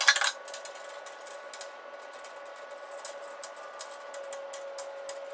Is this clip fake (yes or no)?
no